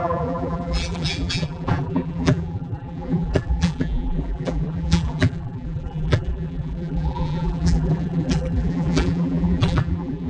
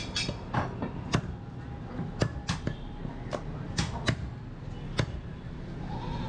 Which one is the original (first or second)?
second